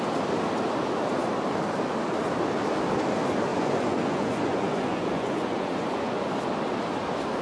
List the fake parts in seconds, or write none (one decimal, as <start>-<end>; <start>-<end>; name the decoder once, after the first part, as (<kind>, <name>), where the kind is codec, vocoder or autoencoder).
3.5-6.3 (vocoder, Vocos)